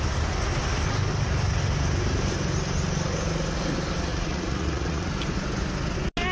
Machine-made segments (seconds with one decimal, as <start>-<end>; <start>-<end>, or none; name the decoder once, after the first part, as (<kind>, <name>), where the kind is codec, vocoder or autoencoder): 4.1-5.1 (vocoder, Vocos)